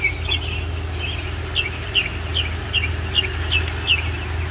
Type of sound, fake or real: real